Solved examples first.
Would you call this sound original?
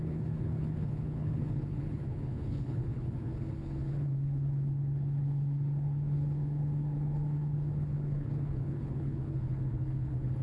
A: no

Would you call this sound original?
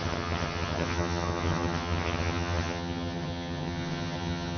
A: no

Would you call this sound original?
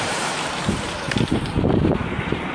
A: no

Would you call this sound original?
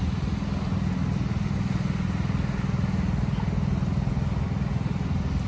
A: yes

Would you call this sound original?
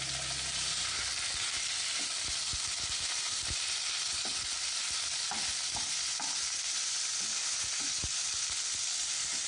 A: yes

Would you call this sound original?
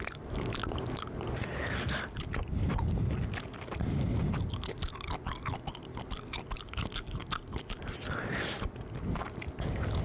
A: yes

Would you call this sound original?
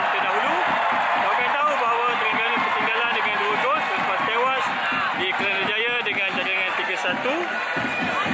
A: yes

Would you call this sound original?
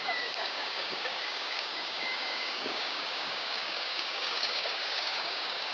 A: no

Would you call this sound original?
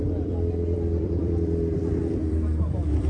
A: no